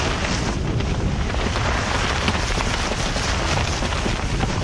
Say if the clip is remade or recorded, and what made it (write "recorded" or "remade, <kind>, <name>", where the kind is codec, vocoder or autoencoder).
recorded